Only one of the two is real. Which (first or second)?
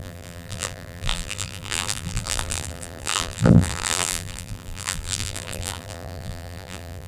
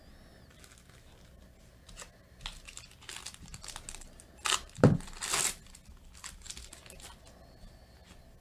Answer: second